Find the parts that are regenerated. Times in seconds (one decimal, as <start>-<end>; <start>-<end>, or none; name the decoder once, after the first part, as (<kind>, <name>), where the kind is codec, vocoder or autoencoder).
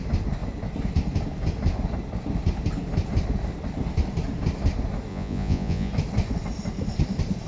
5.1-5.9 (vocoder, Vocos)